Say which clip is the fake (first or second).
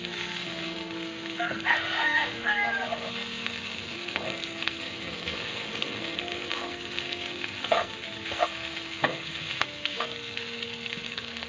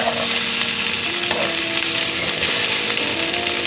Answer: first